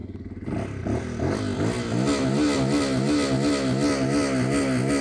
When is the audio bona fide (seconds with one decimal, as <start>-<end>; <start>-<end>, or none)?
0.0-5.0